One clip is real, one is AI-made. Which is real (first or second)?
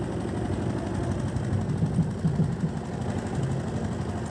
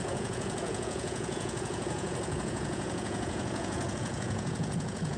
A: first